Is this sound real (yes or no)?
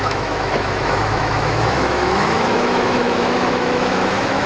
no